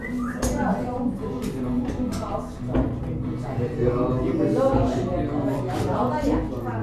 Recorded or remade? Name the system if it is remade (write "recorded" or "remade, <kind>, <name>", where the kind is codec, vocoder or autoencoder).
recorded